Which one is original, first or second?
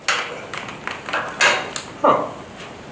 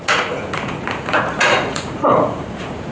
first